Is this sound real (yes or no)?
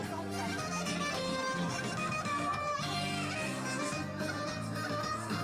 yes